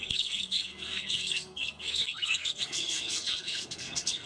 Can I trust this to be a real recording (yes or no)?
no